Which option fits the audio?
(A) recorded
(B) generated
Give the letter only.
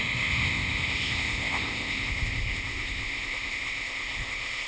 B